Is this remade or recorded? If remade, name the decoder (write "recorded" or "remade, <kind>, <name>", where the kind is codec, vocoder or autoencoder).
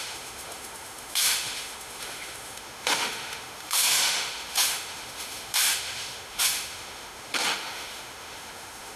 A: remade, autoencoder, DAC-VAE